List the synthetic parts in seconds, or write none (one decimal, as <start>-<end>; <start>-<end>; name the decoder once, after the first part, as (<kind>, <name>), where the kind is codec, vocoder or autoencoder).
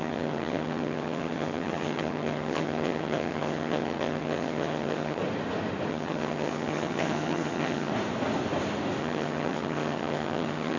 0.0-5.2 (vocoder, HiFi-GAN); 5.9-7.9; 9.0-10.8